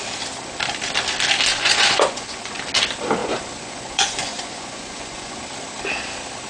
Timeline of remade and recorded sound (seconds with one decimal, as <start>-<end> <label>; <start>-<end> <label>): 0.0-1.5 recorded; 1.5-2.6 remade; 2.6-3.2 recorded; 3.2-5.4 remade; 5.4-6.5 recorded